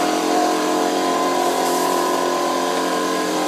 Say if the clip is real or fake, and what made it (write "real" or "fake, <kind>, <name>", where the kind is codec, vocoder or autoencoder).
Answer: fake, vocoder, BigVGAN v2